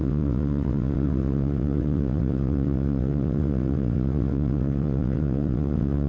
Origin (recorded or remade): remade